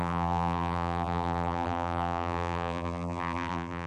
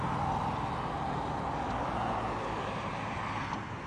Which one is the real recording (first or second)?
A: second